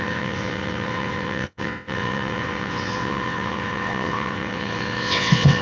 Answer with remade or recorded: remade